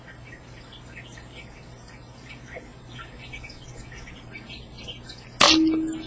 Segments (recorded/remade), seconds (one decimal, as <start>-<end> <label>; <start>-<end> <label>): 0.0-6.1 recorded